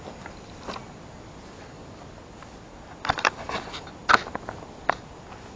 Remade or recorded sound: recorded